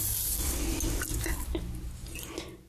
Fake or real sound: real